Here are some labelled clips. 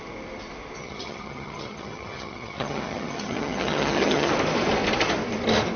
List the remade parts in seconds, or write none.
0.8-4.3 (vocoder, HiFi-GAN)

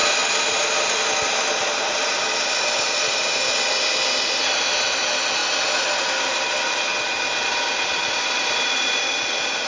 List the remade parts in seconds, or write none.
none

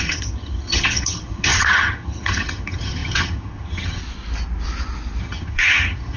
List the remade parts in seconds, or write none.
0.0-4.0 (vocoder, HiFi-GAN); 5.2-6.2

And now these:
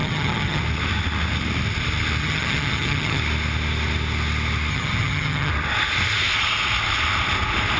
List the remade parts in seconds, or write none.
0.0-0.6 (vocoder, HiFi-GAN); 2.2-3.2; 4.7-5.5

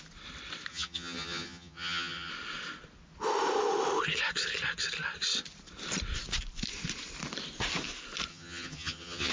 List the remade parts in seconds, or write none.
0.7-2.3 (vocoder, HiFi-GAN); 8.3-9.3